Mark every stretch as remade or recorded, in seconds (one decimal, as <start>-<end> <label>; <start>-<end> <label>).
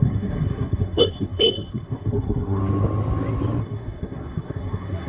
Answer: 0.0-2.6 remade; 2.6-3.6 recorded; 3.6-5.1 remade